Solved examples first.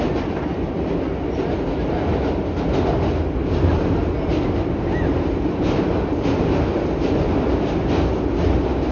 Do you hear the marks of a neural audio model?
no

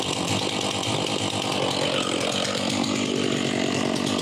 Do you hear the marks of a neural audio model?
yes